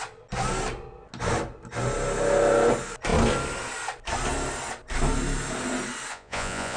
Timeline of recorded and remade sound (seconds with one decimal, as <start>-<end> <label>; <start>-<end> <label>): 0.0-6.1 recorded; 6.1-6.8 remade